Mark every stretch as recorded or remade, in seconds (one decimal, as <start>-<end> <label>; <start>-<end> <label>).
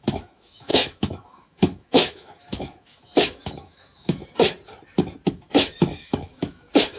0.0-4.2 remade; 4.2-5.3 recorded; 5.3-7.0 remade